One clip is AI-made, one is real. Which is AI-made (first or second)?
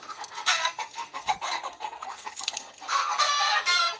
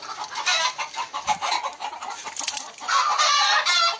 first